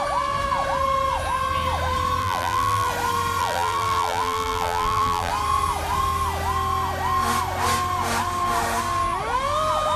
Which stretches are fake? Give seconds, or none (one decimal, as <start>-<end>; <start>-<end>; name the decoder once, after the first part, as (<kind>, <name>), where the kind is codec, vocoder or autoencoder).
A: 2.2-2.9 (vocoder, BigVGAN v2); 3.4-5.3